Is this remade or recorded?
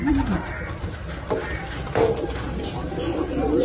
recorded